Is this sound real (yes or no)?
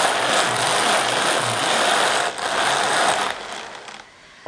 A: yes